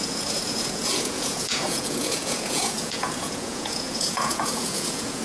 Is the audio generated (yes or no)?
yes